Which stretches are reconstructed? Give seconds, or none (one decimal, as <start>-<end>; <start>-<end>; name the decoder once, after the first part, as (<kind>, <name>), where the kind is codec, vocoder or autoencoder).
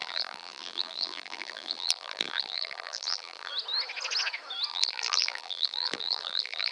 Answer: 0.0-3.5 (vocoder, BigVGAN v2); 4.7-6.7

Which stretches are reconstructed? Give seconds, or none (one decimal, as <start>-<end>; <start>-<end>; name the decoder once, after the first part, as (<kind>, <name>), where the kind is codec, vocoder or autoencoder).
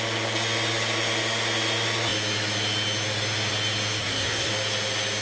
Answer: 4.0-4.5 (codec, SNAC)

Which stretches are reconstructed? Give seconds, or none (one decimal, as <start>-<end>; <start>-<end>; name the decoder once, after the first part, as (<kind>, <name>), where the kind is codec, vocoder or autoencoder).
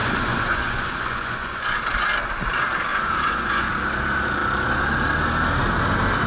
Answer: 0.0-1.8 (vocoder, Vocos); 2.9-3.7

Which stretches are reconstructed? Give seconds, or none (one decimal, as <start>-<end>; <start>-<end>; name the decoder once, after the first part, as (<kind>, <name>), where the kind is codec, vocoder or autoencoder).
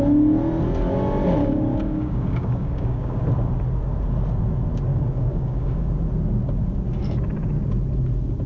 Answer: 1.4-3.2 (codec, DAC); 4.9-5.9